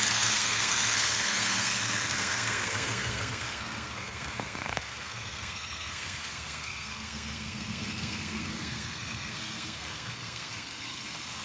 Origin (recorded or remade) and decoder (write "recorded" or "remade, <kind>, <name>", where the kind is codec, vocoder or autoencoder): remade, codec, SNAC